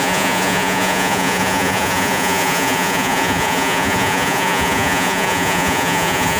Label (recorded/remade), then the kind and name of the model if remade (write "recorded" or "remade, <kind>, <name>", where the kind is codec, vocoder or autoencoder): remade, vocoder, Vocos